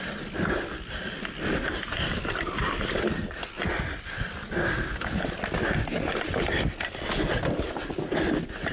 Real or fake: real